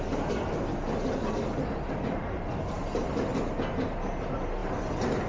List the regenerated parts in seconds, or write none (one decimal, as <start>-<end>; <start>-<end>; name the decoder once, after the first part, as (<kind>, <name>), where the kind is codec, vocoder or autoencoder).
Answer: none